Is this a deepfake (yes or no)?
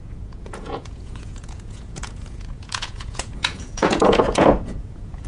yes